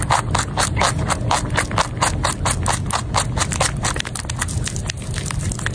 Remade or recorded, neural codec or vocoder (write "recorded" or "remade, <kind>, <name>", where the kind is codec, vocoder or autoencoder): recorded